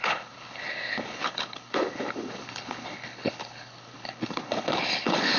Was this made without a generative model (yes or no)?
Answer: no